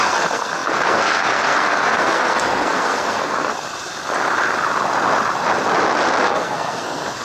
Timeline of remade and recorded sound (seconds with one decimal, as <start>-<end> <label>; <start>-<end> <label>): 0.0-3.5 remade; 3.5-6.2 recorded; 6.2-7.2 remade